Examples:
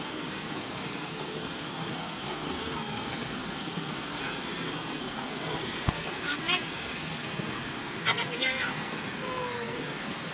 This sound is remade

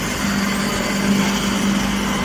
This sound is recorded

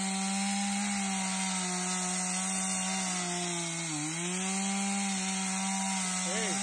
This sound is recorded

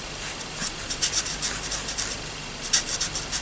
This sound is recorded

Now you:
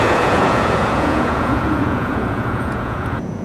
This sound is remade